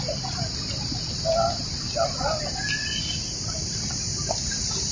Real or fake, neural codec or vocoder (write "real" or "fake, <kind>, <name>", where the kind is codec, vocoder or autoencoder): real